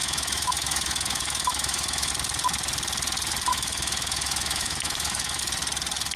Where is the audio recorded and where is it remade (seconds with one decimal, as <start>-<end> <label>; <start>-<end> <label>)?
0.0-2.1 remade; 2.1-3.5 recorded; 3.5-5.4 remade; 5.4-6.2 recorded